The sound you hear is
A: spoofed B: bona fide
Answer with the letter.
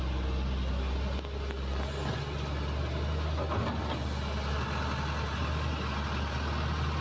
B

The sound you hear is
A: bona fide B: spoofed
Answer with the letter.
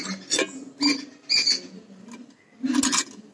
A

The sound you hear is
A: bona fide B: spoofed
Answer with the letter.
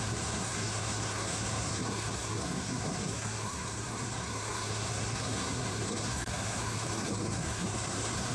B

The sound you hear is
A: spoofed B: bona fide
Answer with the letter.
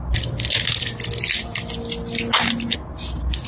B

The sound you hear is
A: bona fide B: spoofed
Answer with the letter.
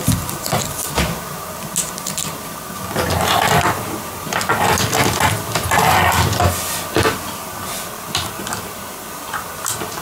A